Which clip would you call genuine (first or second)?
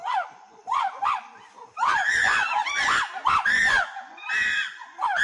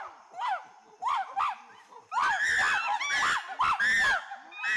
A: second